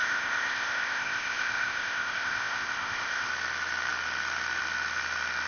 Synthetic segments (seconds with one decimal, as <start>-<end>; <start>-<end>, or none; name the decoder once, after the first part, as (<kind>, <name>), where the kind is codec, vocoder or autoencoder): 0.0-3.3 (codec, ZipCodec)